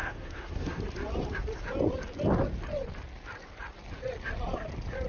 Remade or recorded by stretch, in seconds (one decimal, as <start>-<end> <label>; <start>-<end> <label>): 0.0-0.8 remade; 0.8-5.1 recorded